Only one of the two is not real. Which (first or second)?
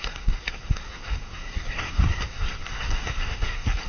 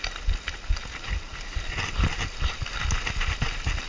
first